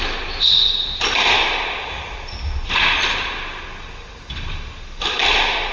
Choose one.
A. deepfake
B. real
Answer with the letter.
B